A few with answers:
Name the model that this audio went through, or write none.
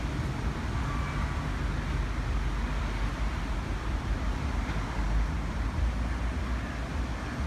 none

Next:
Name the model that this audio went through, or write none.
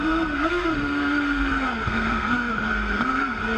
codec, SNAC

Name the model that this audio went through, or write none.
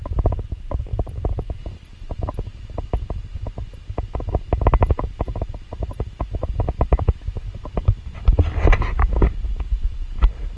none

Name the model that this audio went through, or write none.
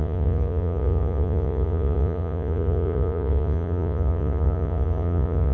vocoder, Vocos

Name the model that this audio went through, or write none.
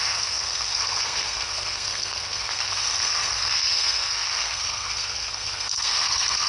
codec, SNAC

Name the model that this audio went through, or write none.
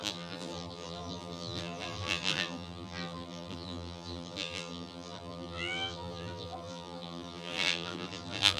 vocoder, BigVGAN v2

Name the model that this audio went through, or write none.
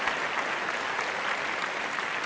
none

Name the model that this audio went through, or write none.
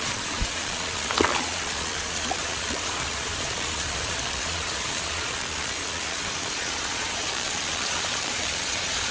vocoder, Vocos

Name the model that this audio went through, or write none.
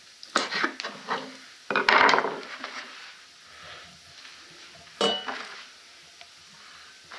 none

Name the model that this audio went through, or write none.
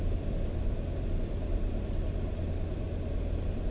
none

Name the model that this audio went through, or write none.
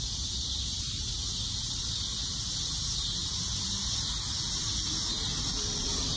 none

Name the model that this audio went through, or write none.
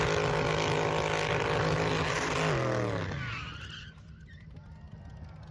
none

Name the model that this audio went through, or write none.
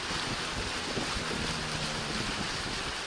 none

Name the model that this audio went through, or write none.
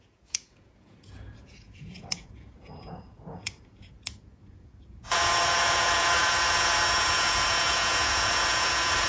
vocoder, Vocos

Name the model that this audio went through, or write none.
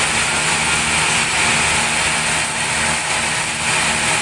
none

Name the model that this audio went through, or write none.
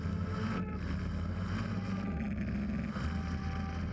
none